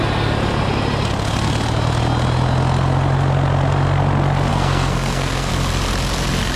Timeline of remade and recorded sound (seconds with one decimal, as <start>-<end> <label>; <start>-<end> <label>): 0.0-4.5 recorded; 4.5-5.5 remade; 5.5-6.6 recorded